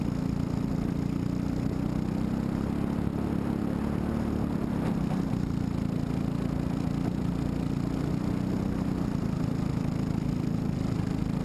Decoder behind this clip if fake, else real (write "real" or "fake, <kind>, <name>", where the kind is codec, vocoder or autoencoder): real